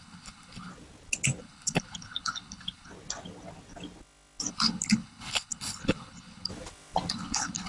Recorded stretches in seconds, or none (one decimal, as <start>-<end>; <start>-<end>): 0.7-1.4; 2.9-4.5; 6.5-7.1